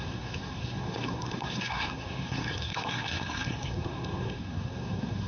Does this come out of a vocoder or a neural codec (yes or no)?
yes